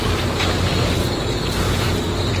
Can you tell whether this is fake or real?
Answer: real